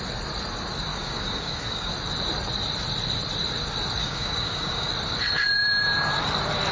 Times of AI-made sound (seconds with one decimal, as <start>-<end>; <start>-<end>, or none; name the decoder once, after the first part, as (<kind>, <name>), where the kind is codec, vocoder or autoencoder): 0.9-1.9 (codec, DAC); 4.0-4.9